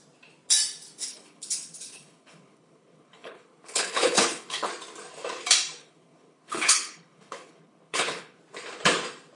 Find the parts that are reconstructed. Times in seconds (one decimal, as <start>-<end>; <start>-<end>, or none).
1.0-4.7; 5.8-8.4